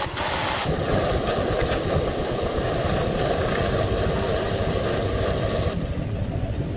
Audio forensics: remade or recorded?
recorded